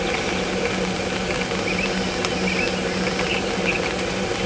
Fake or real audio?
real